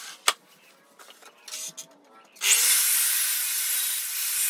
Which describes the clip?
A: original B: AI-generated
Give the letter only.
A